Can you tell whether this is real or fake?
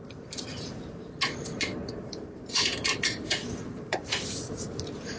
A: fake